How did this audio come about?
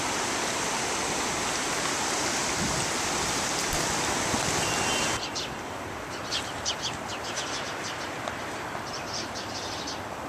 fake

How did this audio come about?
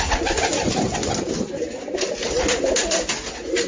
real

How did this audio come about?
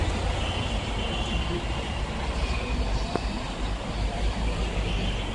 real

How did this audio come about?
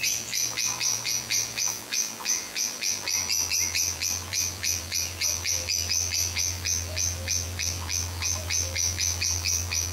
fake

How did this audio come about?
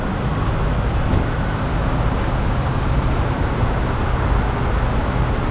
real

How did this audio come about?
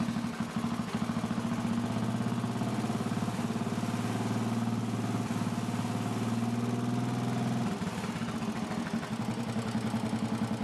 real